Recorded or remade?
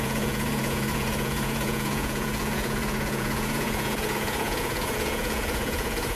remade